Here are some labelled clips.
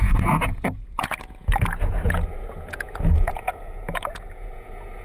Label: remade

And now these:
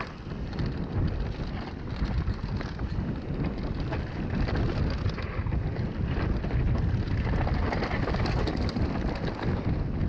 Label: recorded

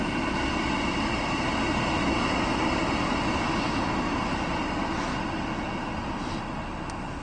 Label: recorded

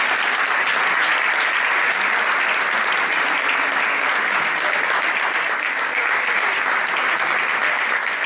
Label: recorded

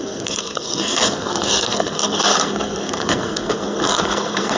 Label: remade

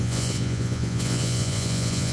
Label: remade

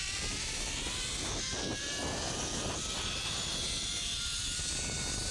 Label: recorded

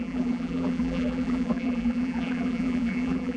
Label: remade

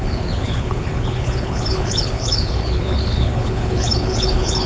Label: remade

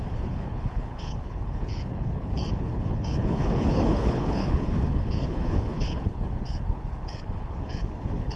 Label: remade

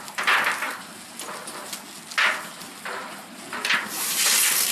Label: recorded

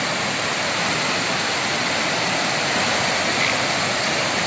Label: recorded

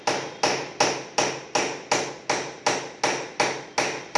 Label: recorded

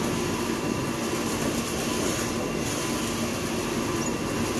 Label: recorded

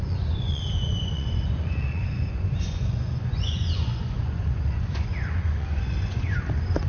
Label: remade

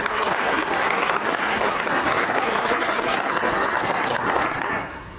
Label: remade